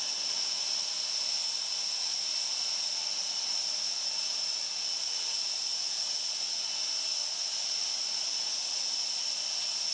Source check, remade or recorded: recorded